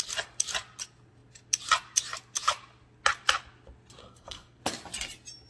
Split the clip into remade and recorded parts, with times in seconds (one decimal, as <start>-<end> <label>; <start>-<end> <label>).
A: 0.0-4.0 recorded; 4.0-4.6 remade; 4.6-5.5 recorded